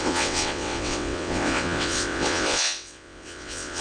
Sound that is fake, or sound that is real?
fake